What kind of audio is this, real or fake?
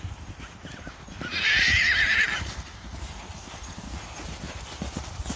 real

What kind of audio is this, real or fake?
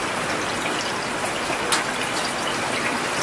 real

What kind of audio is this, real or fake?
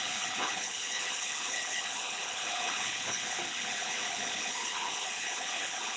fake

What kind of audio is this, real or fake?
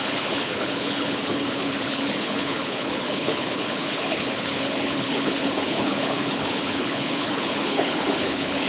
fake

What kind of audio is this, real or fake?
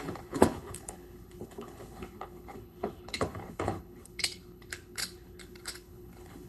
fake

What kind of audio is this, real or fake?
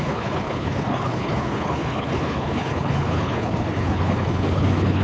fake